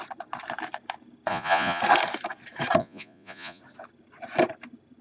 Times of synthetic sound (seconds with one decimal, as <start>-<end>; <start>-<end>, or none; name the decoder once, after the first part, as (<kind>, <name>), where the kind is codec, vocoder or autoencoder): 1.3-1.8 (vocoder, Vocos); 2.8-3.6